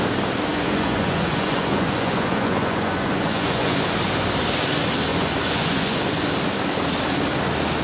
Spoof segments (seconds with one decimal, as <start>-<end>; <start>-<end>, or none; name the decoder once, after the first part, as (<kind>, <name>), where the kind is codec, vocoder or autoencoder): 0.5-3.8 (vocoder, Vocos); 5.1-6.3